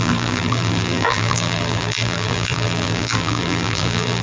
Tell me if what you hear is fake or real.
fake